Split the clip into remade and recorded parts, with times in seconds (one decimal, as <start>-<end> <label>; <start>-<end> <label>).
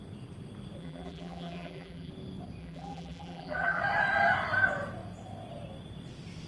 0.0-0.8 recorded; 0.8-2.1 remade; 2.1-2.6 recorded; 2.6-3.8 remade; 3.8-6.5 recorded